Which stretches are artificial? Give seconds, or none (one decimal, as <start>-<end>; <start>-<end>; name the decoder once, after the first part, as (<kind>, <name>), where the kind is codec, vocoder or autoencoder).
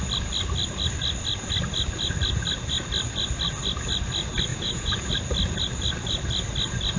4.5-5.1 (vocoder, Vocos)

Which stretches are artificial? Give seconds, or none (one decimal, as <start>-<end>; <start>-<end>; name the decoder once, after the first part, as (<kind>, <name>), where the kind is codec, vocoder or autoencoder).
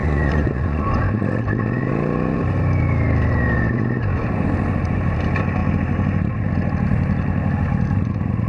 0.0-1.0 (vocoder, Vocos)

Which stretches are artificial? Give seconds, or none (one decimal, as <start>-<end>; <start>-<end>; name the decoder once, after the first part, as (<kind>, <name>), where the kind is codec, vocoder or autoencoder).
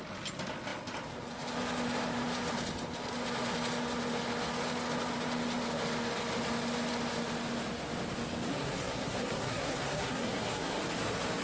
8.5-10.8 (codec, SNAC)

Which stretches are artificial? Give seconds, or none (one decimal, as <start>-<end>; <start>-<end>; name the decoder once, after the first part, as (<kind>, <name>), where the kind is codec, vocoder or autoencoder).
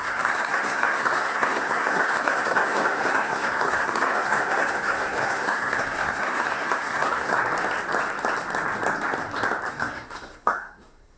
0.0-7.4 (codec, SNAC); 9.7-11.2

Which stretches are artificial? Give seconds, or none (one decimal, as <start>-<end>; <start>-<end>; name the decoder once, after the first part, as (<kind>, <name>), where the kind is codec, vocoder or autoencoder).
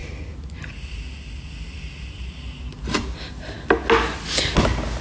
none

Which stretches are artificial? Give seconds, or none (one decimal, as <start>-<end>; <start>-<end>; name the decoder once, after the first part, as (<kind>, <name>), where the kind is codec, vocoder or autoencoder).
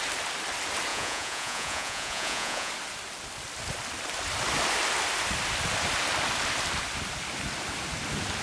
0.9-2.7 (vocoder, Vocos)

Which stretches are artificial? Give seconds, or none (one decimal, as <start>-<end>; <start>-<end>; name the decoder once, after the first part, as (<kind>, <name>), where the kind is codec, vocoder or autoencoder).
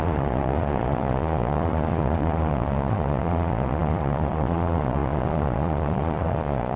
0.0-6.8 (vocoder, Vocos)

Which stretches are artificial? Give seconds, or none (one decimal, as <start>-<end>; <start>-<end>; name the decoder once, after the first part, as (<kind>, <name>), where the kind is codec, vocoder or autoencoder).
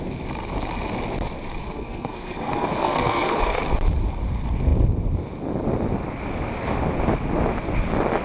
1.6-3.6 (codec, SNAC)